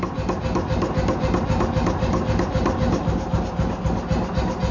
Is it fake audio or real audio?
real